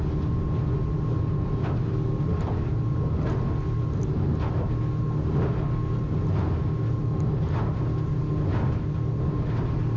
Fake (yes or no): no